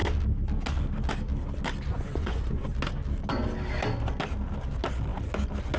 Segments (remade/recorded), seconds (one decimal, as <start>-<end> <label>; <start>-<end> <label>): 0.0-1.9 recorded; 1.9-2.7 remade; 2.7-5.8 recorded